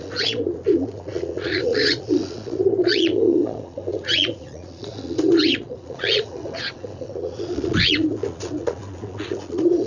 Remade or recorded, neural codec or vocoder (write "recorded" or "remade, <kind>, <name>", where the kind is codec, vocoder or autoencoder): remade, vocoder, Vocos